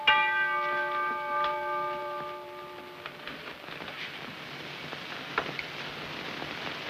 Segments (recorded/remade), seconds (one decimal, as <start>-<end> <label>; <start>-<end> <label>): 0.0-6.9 recorded